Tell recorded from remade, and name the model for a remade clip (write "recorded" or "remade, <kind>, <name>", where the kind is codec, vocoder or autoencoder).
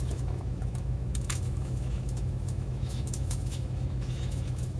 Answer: remade, autoencoder, DAC-VAE